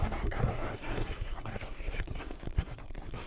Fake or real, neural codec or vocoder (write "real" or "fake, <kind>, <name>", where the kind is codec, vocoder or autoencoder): fake, codec, SNAC